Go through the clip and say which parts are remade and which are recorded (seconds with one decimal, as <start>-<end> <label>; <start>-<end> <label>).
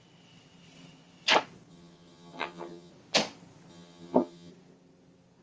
0.0-1.7 recorded; 1.7-2.9 remade; 2.9-3.7 recorded; 3.7-4.5 remade; 4.5-5.4 recorded